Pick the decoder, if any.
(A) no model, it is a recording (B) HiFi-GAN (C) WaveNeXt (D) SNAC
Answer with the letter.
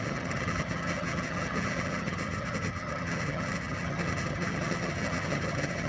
B